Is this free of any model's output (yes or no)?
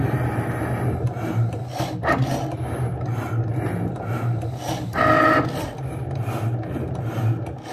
yes